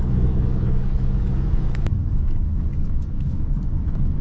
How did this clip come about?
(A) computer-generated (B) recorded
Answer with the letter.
A